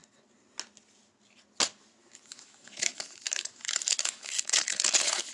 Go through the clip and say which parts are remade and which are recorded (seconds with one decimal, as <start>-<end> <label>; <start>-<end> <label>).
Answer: 0.0-2.0 recorded; 2.0-5.3 remade